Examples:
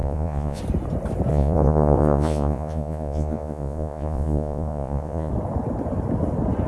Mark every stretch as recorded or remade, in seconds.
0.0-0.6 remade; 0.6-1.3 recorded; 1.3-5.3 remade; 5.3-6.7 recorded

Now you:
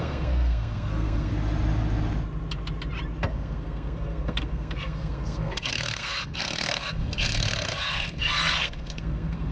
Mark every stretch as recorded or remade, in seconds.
0.0-1.3 remade; 1.3-3.3 recorded; 3.3-9.5 remade

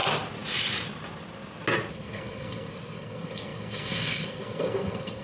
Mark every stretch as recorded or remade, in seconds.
0.0-1.9 recorded; 1.9-5.2 remade

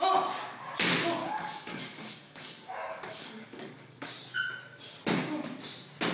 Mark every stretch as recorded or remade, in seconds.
0.0-1.2 recorded; 1.2-4.1 remade; 4.1-6.1 recorded

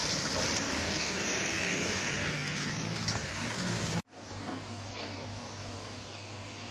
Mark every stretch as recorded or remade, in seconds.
0.0-0.6 recorded; 0.6-6.7 remade

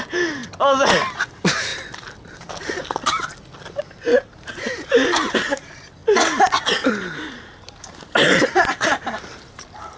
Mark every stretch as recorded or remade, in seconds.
0.0-0.4 remade; 0.4-1.2 recorded; 1.2-1.7 remade; 1.7-3.8 recorded; 3.8-6.0 remade; 6.0-6.9 recorded; 6.9-10.0 remade

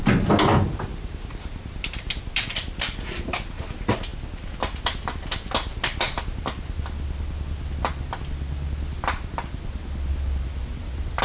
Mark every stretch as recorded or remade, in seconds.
0.0-11.2 recorded